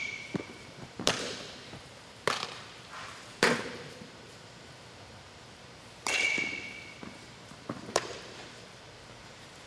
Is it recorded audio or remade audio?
remade